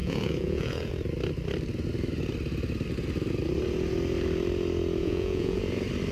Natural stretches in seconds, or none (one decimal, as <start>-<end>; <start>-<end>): 0.9-5.0; 5.6-6.1